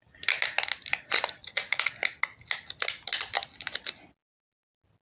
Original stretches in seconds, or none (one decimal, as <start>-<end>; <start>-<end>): 0.0-1.4; 1.9-5.0